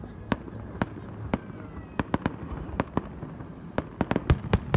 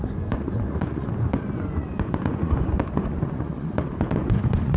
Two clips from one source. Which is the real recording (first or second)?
first